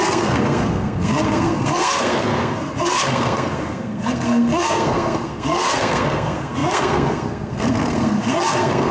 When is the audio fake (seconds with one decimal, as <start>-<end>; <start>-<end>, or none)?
0.0-8.9